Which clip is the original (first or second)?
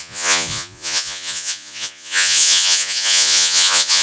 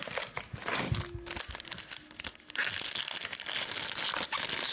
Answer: second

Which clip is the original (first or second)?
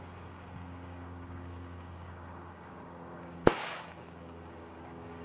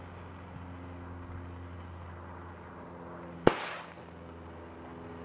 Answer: second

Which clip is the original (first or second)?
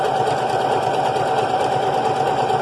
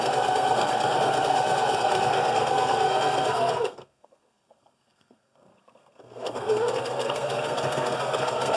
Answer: first